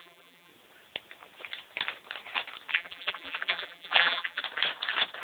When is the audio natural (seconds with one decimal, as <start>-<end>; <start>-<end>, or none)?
0.5-2.7; 4.4-5.2